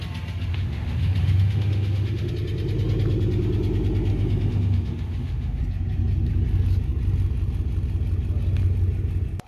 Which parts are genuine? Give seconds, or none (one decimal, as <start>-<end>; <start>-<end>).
0.0-0.5; 2.3-4.1; 5.6-9.5